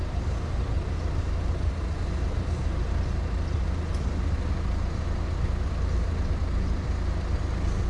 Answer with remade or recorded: recorded